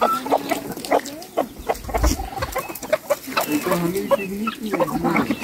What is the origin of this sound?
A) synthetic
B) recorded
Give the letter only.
B